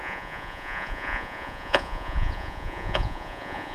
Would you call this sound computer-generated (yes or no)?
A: yes